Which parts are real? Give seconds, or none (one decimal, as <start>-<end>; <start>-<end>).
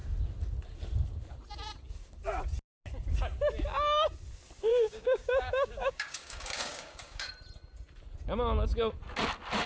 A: 0.0-4.7; 7.3-9.7